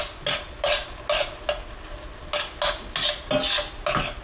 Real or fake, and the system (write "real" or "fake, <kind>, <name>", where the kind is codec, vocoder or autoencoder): real